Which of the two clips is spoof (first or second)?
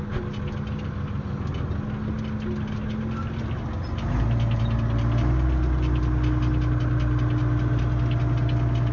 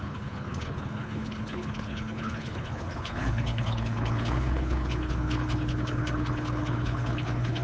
second